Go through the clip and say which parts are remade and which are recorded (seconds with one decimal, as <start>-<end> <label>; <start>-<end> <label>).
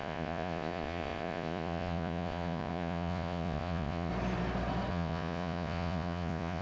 0.0-4.1 remade; 4.1-4.9 recorded; 4.9-6.6 remade